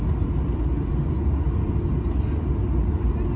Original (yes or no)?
yes